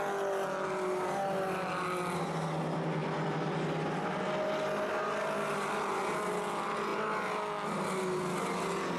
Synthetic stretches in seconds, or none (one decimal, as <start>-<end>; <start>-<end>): none